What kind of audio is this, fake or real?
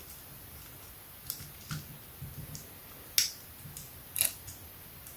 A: real